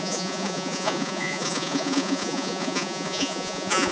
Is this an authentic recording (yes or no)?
no